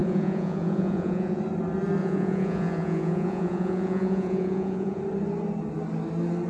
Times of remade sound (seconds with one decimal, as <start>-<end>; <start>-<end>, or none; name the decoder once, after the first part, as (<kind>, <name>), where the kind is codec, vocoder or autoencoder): 0.0-1.4 (vocoder, Vocos); 2.0-5.0

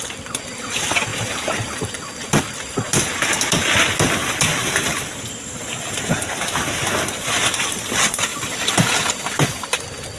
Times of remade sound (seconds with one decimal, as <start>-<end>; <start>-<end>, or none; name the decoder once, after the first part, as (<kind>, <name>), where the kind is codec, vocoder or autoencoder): 1.1-2.4 (vocoder, BigVGAN v2); 8.3-8.9

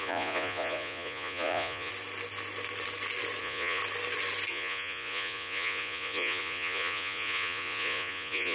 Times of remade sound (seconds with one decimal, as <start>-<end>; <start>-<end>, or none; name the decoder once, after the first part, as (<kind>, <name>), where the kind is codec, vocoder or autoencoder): 0.0-1.9 (vocoder, Vocos); 3.4-3.8; 4.5-8.5

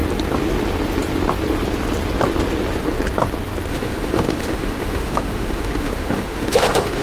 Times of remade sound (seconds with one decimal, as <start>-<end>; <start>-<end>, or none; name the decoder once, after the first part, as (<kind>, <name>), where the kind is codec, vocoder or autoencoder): 3.7-7.0 (autoencoder, DAC-VAE)

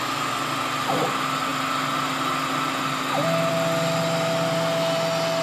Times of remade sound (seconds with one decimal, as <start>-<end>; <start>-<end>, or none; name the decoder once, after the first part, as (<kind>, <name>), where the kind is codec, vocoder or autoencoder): none

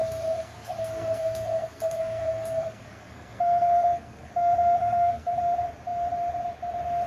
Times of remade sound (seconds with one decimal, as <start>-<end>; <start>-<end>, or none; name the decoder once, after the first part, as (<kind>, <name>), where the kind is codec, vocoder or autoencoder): 0.0-4.3 (codec, SNAC); 4.8-5.4

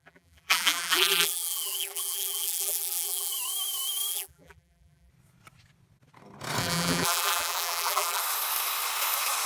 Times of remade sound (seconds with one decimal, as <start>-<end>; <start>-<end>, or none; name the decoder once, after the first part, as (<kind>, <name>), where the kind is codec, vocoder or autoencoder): 0.0-3.3 (vocoder, BigVGAN v2); 4.1-5.1; 6.6-8.2